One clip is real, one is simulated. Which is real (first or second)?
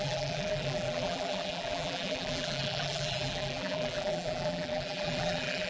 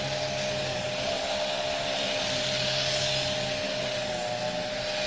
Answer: second